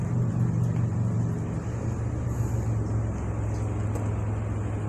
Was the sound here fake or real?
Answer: real